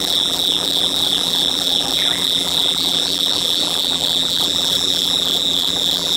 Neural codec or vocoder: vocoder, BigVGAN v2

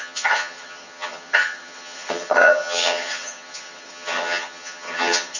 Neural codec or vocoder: vocoder, HiFi-GAN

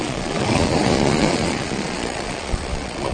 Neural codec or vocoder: vocoder, Vocos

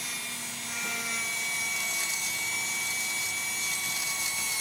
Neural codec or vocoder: none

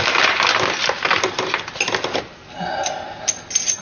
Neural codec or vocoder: none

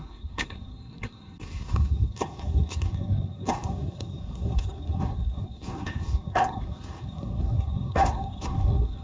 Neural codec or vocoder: codec, SNAC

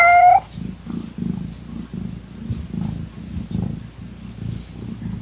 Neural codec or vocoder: none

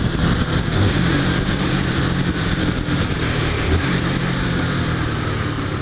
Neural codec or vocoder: vocoder, BigVGAN v2